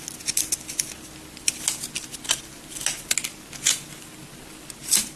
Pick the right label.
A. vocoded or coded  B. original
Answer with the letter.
B